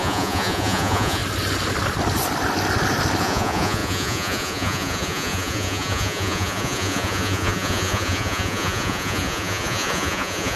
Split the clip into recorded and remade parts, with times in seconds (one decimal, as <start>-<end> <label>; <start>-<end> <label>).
0.0-1.2 remade; 1.2-3.2 recorded; 3.2-10.6 remade